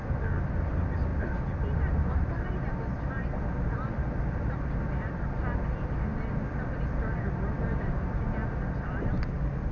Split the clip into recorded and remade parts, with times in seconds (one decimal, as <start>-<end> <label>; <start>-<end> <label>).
0.0-9.7 recorded